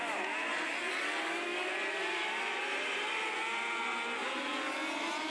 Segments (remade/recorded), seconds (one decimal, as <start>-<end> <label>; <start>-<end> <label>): 0.0-0.8 recorded; 0.8-1.7 remade; 1.7-5.3 recorded